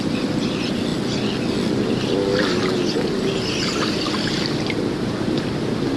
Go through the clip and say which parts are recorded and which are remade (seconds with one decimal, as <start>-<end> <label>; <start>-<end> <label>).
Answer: 0.0-6.0 recorded